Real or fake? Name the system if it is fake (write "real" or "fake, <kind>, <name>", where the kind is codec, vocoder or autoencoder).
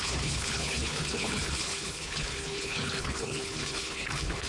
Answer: fake, codec, HILCodec